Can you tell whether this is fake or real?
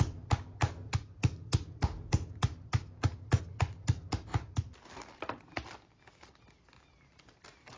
real